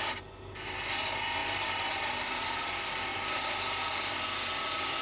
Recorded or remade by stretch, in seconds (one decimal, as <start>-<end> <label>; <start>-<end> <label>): 0.0-1.4 recorded; 1.4-2.6 remade; 2.6-3.1 recorded; 3.1-3.8 remade; 3.8-5.0 recorded